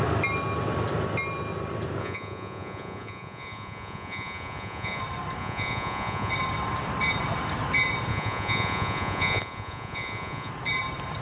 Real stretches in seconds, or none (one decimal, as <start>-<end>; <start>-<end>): 0.0-2.0; 5.0-5.4; 6.3-8.1; 10.5-11.2